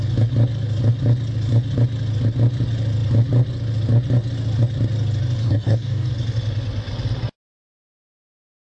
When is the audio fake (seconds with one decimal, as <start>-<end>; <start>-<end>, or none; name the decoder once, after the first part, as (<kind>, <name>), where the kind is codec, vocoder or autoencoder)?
5.4-6.1 (codec, DAC)